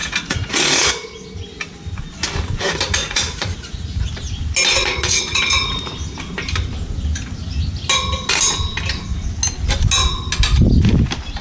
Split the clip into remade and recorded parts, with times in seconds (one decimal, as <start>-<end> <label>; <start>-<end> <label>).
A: 0.0-0.9 remade; 0.9-3.0 recorded; 3.0-4.1 remade; 4.1-4.8 recorded; 4.8-5.8 remade; 5.8-11.4 recorded